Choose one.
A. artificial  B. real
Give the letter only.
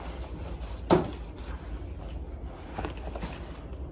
B